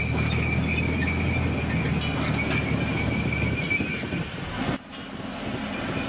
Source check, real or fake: real